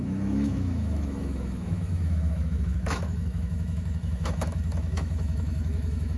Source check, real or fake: fake